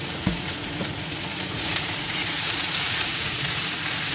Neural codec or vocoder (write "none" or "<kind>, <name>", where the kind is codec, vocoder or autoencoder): vocoder, Vocos